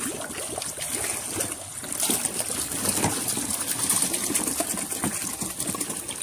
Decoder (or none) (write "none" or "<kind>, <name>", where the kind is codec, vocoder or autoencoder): none